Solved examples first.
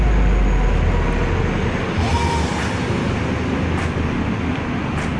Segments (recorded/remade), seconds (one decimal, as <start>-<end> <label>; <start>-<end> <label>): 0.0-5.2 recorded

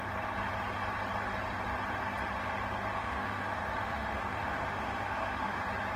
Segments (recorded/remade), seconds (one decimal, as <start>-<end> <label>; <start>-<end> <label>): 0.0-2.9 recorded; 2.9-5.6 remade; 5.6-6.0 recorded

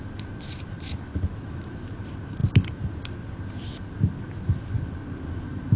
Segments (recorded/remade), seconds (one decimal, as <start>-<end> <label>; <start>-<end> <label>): 0.0-1.3 recorded; 1.3-1.9 remade; 1.9-5.8 recorded

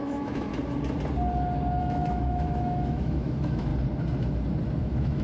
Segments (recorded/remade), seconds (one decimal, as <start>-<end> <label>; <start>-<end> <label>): 0.0-0.5 remade; 0.5-1.8 recorded; 1.8-3.7 remade; 3.7-4.8 recorded; 4.8-5.2 remade

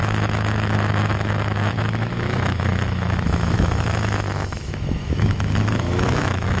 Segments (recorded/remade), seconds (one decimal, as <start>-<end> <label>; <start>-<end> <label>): 0.0-6.6 remade

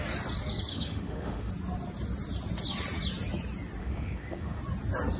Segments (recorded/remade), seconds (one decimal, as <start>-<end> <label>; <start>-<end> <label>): 0.0-0.7 recorded; 0.7-1.5 remade; 1.5-3.8 recorded; 3.8-4.6 remade; 4.6-5.2 recorded